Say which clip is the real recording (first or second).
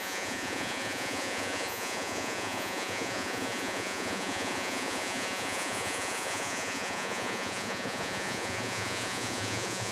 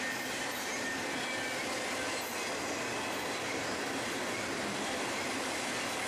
second